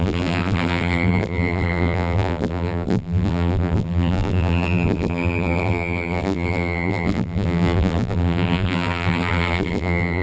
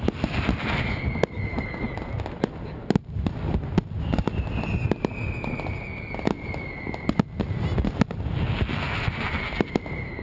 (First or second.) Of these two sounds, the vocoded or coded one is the first